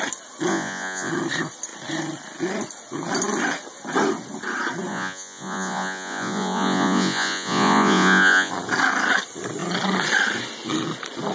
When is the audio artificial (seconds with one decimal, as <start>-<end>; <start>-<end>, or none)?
0.5-1.1; 4.9-8.5